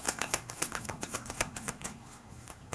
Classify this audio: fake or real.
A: fake